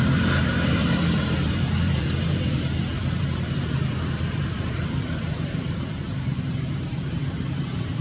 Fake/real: fake